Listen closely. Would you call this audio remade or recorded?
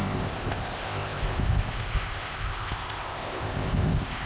remade